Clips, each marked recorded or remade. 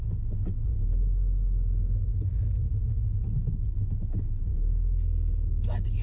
recorded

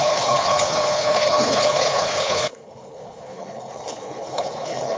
remade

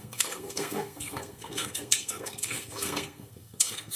remade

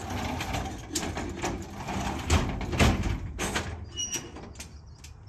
recorded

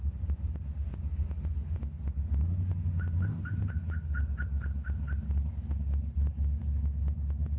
recorded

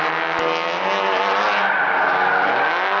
recorded